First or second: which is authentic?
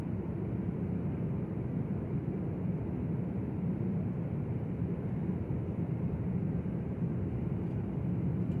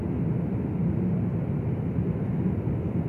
second